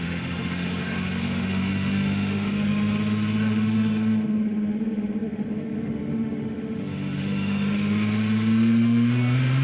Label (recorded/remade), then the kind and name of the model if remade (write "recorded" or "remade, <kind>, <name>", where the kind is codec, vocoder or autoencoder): remade, autoencoder, DAC-VAE